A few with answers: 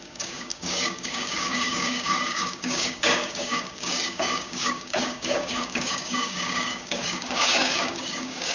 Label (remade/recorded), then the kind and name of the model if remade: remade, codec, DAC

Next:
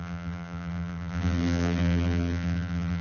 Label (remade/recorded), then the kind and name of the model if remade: remade, vocoder, BigVGAN v2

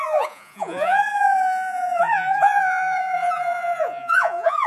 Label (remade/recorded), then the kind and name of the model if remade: remade, vocoder, Vocos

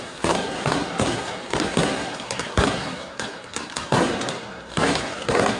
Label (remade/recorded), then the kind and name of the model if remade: remade, codec, SNAC